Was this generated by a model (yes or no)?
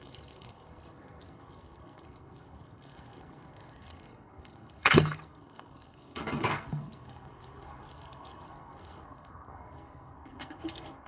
yes